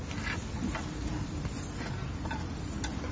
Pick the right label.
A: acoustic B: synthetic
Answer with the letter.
A